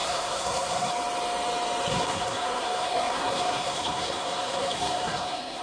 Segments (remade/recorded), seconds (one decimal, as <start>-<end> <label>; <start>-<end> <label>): 0.0-0.9 remade; 0.9-1.9 recorded; 1.9-5.6 remade